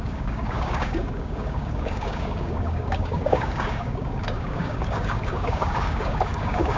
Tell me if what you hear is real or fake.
fake